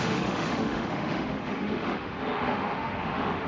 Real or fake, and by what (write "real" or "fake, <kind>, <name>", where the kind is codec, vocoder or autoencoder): fake, autoencoder, DAC-VAE